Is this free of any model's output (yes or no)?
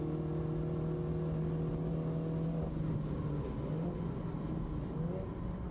yes